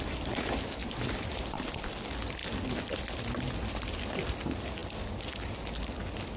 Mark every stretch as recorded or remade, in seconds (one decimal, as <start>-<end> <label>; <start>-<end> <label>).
0.0-6.4 recorded

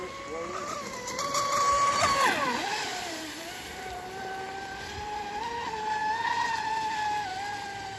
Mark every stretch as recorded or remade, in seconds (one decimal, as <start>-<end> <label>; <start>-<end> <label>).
0.0-2.9 recorded; 2.9-5.4 remade; 5.4-8.0 recorded

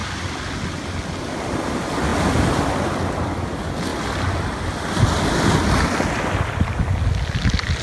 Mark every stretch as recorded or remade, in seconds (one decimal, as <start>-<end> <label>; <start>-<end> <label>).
0.0-7.8 recorded

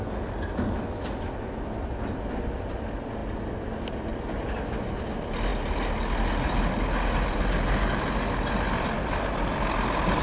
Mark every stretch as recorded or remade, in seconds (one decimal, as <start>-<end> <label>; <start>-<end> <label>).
0.0-10.2 recorded

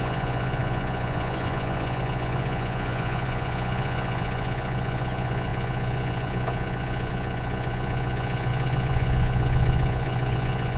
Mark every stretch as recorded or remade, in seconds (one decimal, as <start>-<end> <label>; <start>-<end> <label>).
0.0-10.8 remade

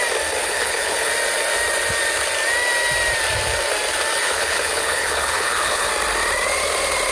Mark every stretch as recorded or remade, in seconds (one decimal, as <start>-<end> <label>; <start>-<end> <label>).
0.0-0.4 recorded; 0.4-1.1 remade; 1.1-4.2 recorded; 4.2-5.9 remade; 5.9-7.1 recorded

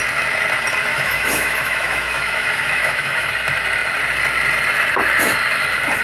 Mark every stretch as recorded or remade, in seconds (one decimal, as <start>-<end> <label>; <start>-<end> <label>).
0.0-0.9 recorded; 0.9-3.3 remade; 3.3-6.0 recorded